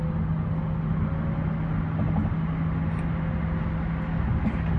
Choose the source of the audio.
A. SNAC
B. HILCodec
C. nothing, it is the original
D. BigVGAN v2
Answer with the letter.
C